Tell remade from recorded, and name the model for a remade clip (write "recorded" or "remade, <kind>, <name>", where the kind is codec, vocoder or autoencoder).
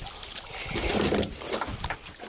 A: recorded